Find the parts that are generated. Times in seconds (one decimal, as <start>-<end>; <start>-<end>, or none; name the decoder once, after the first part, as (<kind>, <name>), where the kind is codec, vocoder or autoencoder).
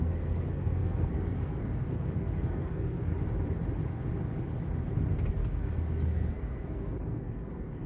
0.0-3.1 (codec, SNAC); 5.3-7.9